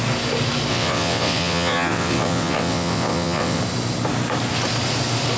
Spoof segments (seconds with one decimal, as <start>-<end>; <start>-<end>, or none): 0.7-3.6

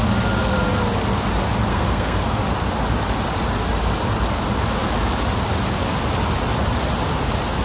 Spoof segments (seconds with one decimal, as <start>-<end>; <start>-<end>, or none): 1.7-2.4

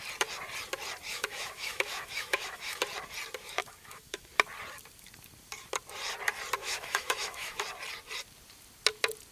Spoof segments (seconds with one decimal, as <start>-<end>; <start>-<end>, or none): 1.1-2.8; 3.6-4.3; 6.6-7.6